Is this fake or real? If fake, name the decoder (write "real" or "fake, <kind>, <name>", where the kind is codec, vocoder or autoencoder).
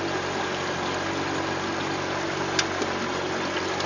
real